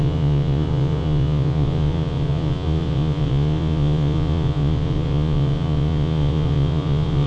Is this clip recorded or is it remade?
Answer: remade